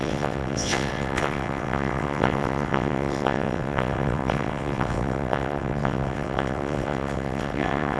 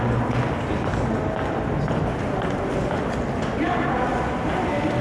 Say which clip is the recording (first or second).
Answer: second